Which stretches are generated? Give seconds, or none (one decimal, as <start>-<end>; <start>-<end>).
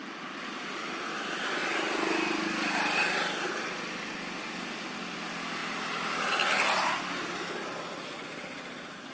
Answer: none